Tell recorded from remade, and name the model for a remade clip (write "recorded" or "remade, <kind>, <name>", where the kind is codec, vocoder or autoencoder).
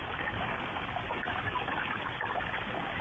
remade, codec, DAC